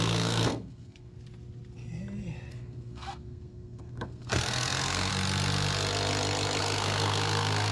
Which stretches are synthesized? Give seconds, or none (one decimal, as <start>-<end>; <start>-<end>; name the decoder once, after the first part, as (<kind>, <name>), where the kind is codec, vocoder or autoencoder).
0.0-1.2 (codec, SNAC); 2.5-5.1; 6.6-7.7